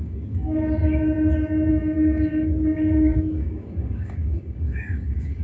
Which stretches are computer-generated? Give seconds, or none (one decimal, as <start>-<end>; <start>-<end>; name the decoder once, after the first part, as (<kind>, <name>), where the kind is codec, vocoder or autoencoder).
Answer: 0.0-0.8 (codec, DAC); 1.7-5.4